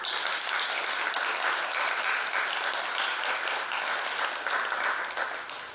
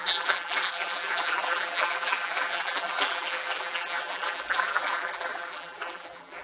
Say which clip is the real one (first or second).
first